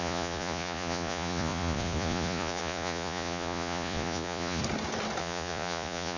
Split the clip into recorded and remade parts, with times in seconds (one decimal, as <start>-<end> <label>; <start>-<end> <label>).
0.0-4.6 remade; 4.6-5.2 recorded; 5.2-6.2 remade

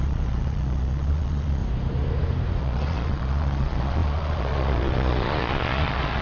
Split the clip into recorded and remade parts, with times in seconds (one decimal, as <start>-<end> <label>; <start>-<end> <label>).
0.0-1.6 remade; 1.6-2.6 recorded; 2.6-6.2 remade

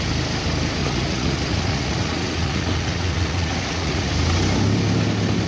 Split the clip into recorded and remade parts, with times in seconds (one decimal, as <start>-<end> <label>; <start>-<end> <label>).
0.0-0.8 recorded; 0.8-4.1 remade; 4.1-5.5 recorded

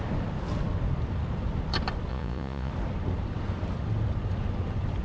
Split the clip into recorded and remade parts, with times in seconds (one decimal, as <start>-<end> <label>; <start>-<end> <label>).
0.0-2.1 recorded; 2.1-2.7 remade; 2.7-5.0 recorded

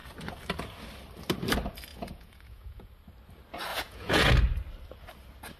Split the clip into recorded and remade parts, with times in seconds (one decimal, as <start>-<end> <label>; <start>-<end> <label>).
0.0-1.9 recorded; 1.9-2.9 remade; 2.9-3.7 recorded; 3.7-4.3 remade; 4.3-5.6 recorded

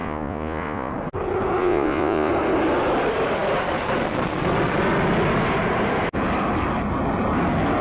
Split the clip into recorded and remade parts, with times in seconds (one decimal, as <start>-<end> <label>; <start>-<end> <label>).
0.0-0.9 remade; 0.9-1.6 recorded; 1.6-2.3 remade; 2.3-7.8 recorded